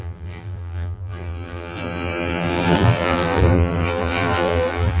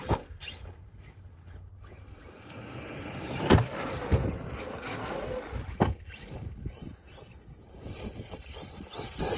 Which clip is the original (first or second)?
second